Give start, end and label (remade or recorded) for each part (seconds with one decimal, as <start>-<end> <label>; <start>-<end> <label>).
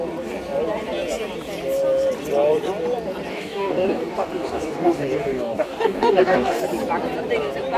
0.0-3.3 recorded; 3.3-6.6 remade; 6.6-7.8 recorded